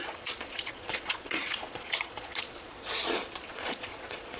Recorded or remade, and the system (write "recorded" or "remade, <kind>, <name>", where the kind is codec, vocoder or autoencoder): remade, vocoder, Vocos